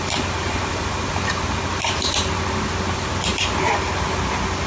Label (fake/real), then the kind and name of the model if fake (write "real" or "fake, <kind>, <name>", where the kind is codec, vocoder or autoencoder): real